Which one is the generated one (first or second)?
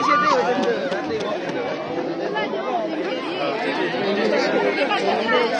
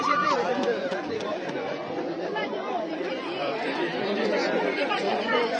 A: second